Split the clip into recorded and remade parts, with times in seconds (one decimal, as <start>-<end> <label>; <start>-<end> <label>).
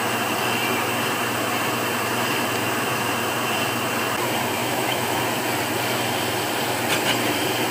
0.0-4.6 recorded; 4.6-5.2 remade; 5.2-7.7 recorded